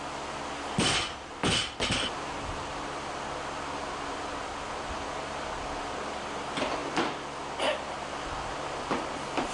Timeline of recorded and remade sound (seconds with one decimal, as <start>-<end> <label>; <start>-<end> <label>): 0.0-9.5 recorded